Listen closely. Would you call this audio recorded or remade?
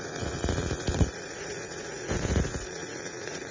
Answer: remade